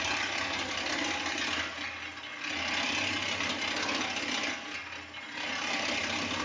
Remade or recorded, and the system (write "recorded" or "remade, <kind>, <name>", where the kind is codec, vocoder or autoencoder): recorded